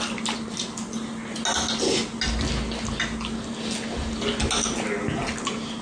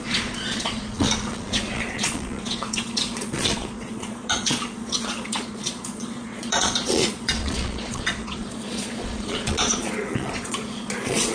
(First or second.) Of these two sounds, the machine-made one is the second